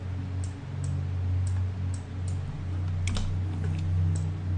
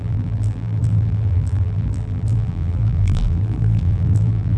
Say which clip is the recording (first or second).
first